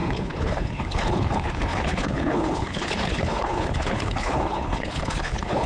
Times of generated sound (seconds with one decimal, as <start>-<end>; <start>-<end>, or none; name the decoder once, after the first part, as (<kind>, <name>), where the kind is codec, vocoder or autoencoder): 0.0-5.7 (codec, HILCodec)